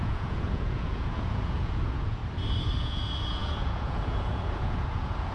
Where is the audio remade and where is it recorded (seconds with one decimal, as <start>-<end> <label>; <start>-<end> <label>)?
0.0-2.2 remade; 2.2-2.8 recorded; 2.8-5.3 remade